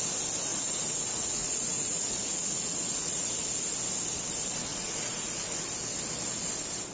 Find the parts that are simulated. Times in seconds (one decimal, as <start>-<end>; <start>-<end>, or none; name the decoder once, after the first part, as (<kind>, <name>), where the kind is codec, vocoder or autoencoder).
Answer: 0.5-3.3 (vocoder, Vocos); 4.7-5.6